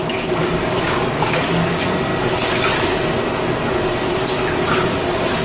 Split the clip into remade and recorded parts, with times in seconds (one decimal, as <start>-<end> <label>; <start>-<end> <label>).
0.0-2.1 remade; 2.1-5.4 recorded